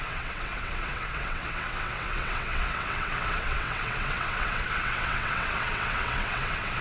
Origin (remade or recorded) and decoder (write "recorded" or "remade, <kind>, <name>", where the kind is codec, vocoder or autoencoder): remade, vocoder, WaveNeXt